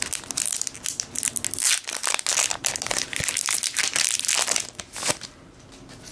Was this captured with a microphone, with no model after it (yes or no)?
yes